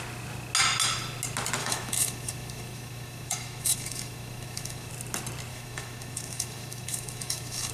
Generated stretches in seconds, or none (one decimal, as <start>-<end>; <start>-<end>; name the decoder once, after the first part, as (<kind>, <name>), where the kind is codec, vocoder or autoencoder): 1.6-4.9 (autoencoder, DAC-VAE); 5.5-7.7